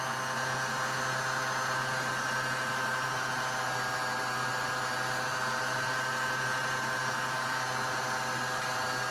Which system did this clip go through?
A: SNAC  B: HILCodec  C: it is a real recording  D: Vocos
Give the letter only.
C